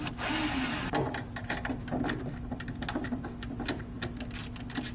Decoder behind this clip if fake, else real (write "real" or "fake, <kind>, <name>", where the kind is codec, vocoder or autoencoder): real